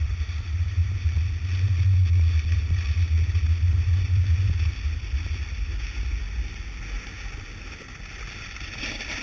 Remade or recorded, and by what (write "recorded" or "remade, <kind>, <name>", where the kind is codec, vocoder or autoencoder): recorded